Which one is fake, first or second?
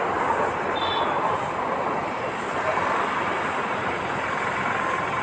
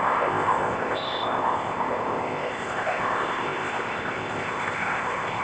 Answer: second